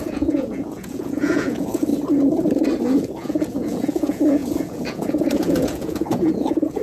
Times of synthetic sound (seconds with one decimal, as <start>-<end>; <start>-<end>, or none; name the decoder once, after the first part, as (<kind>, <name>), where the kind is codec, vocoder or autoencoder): 0.0-1.9 (vocoder, Vocos); 2.8-6.8